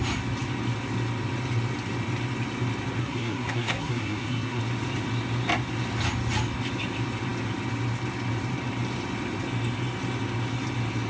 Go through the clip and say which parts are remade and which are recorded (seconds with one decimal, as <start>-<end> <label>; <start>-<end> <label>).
0.0-3.0 recorded; 3.0-4.6 remade; 4.6-11.1 recorded